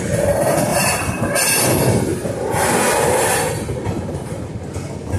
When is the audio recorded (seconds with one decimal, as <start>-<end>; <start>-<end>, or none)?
0.0-0.7; 1.4-5.2